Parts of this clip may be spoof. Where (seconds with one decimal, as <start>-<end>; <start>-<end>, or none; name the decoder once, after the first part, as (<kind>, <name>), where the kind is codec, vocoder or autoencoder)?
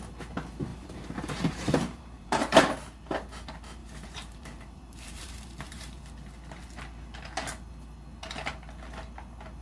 0.7-2.7 (vocoder, BigVGAN v2); 3.8-6.0